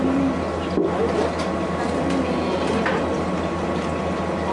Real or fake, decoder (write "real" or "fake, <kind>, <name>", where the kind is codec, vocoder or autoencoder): real